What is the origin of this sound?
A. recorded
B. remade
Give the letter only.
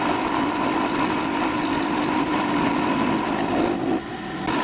A